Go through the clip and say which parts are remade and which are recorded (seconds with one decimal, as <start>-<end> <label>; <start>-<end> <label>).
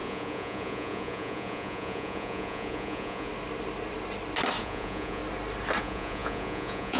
0.0-3.3 remade; 3.3-4.6 recorded; 4.6-5.2 remade; 5.2-5.8 recorded; 5.8-7.0 remade